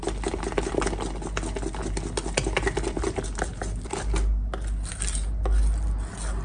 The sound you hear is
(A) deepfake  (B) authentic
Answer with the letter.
B